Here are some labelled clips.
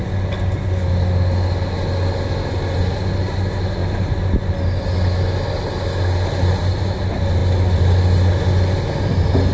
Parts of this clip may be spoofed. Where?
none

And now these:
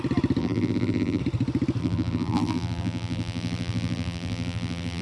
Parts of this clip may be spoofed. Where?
0.4-1.2 (vocoder, BigVGAN v2); 1.8-5.0

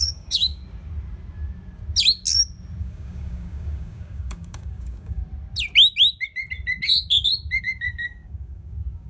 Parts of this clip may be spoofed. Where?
0.0-0.6 (codec, DAC); 2.8-5.2; 7.6-9.1

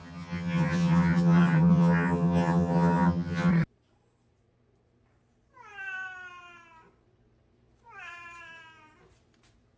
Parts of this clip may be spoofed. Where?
0.0-3.5 (vocoder, HiFi-GAN)

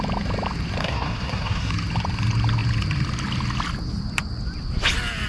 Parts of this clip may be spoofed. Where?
0.8-1.7 (codec, SNAC)

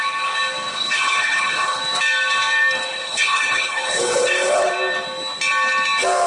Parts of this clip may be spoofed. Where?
0.7-1.8 (codec, HILCodec); 2.9-4.7

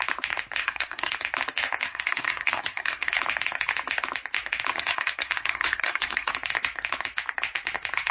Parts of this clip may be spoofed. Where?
0.6-1.1 (codec, SNAC); 1.8-3.2; 4.7-6.3